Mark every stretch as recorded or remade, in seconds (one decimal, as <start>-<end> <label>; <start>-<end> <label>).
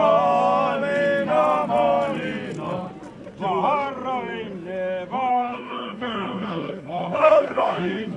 0.0-5.3 recorded; 5.3-8.2 remade